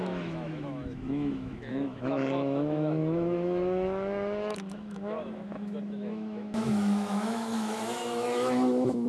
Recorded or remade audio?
remade